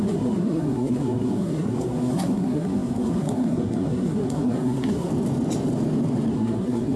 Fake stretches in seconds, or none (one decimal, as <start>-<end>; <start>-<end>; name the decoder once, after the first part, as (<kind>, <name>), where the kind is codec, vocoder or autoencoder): 0.0-5.1 (codec, SNAC); 6.3-7.0